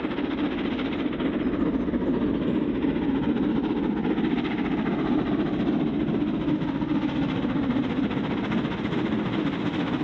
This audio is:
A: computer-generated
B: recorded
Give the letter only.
B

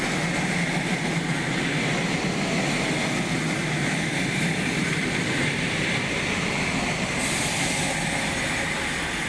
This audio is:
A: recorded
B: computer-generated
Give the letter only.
A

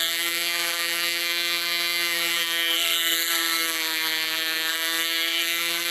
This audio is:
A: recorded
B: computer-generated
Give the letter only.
B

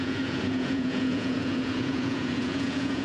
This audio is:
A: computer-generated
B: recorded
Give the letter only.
A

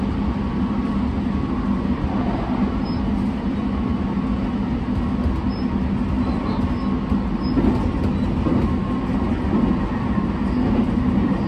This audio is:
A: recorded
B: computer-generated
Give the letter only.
A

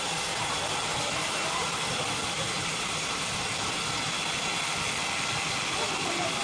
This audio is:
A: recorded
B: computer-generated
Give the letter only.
A